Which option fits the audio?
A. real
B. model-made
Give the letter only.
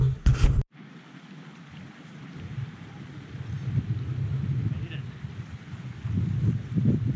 A